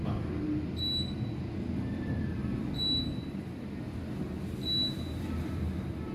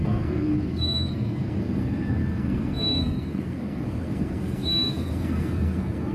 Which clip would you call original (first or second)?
first